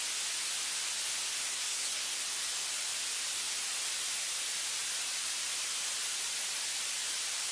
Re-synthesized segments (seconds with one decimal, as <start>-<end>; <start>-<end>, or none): 1.5-2.2